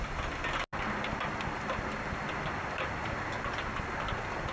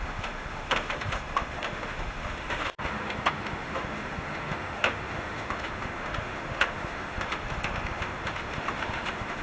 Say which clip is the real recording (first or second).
first